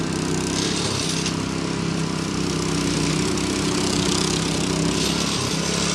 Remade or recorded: recorded